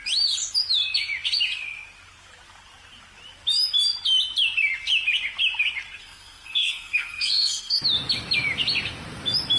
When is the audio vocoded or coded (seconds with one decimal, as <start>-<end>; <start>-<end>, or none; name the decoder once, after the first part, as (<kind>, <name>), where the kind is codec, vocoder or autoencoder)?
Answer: 6.0-7.8 (codec, SNAC)